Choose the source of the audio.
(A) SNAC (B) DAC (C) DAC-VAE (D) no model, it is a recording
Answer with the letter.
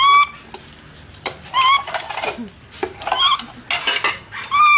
D